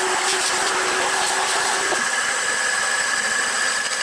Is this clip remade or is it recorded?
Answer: recorded